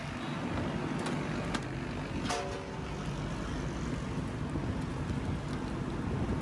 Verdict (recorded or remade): recorded